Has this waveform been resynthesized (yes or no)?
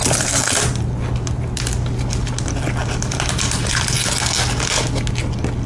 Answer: no